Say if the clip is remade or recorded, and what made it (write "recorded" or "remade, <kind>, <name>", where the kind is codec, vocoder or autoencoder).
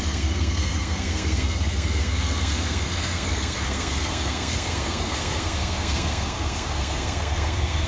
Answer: remade, codec, SNAC